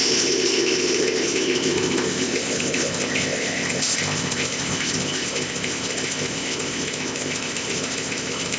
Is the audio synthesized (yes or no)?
yes